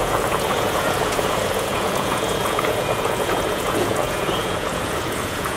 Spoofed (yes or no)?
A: yes